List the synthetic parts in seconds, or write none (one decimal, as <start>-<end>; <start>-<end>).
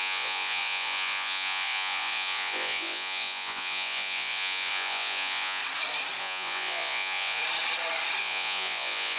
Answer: 0.0-5.6; 6.2-7.4; 8.2-9.2